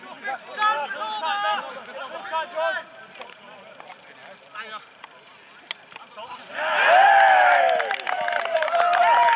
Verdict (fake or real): real